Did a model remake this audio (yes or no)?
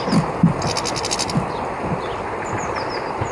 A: no